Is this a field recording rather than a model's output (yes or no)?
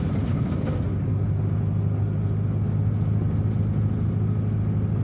yes